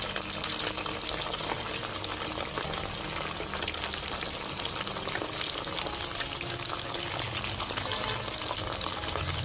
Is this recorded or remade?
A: recorded